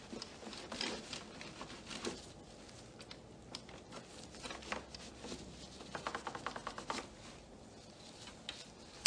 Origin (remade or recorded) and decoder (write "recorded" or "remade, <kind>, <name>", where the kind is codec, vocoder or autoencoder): recorded